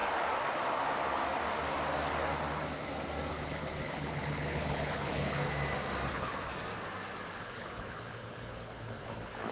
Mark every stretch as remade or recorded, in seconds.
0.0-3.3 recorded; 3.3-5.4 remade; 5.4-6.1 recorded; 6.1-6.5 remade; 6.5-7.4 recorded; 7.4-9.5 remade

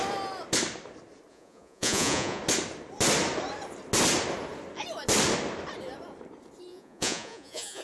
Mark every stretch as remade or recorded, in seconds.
0.0-1.3 recorded; 1.3-2.4 remade; 2.4-6.7 recorded; 6.7-7.8 remade

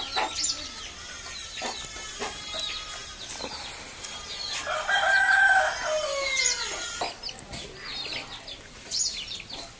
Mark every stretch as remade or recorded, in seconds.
0.0-9.8 recorded

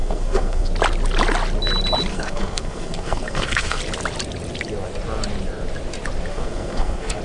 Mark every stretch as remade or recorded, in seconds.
0.0-0.7 remade; 0.7-2.1 recorded; 2.1-3.8 remade; 3.8-6.3 recorded; 6.3-7.2 remade

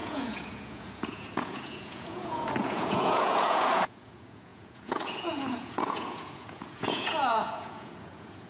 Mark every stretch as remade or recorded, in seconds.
0.0-8.5 remade

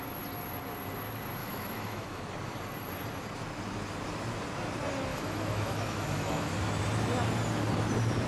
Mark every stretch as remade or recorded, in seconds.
0.0-1.4 recorded; 1.4-2.2 remade; 2.2-5.1 recorded; 5.1-6.5 remade; 6.5-8.3 recorded

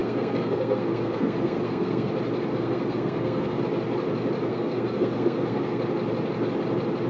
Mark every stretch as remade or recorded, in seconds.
0.0-2.1 remade; 2.1-2.5 recorded; 2.5-3.6 remade; 3.6-4.5 recorded; 4.5-5.8 remade; 5.8-7.1 recorded